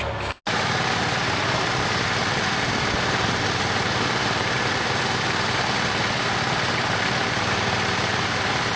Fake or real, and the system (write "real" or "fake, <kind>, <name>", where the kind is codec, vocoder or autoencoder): real